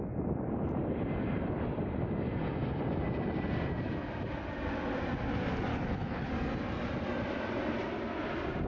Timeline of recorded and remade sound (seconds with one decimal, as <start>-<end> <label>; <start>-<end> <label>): 0.0-5.7 recorded; 5.7-6.3 remade; 6.3-8.7 recorded